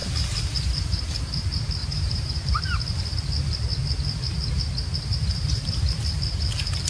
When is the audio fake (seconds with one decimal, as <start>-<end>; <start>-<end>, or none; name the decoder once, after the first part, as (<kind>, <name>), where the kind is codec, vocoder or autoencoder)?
1.8-2.6 (vocoder, BigVGAN v2)